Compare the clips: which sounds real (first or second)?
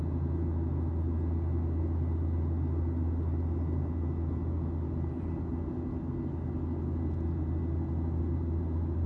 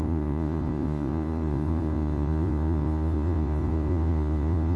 first